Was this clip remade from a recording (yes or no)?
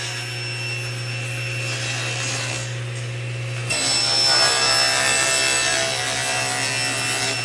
no